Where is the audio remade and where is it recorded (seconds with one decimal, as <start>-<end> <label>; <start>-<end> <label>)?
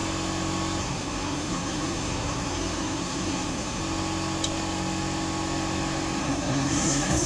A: 0.0-0.8 recorded; 0.8-3.8 remade; 3.8-6.2 recorded; 6.2-7.3 remade